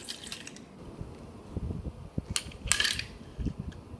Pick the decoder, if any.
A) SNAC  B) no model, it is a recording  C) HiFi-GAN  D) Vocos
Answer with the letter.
B